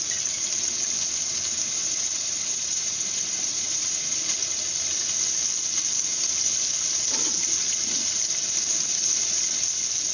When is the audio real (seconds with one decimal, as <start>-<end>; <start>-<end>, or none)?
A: 0.0-1.8; 3.9-10.1